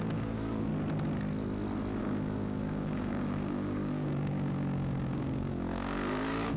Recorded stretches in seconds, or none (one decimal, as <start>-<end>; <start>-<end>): 0.7-2.0